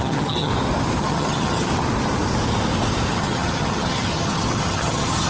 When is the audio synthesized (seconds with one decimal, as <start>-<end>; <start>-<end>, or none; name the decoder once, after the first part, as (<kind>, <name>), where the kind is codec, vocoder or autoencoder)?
0.0-0.5 (vocoder, HiFi-GAN); 1.0-1.7; 3.1-5.3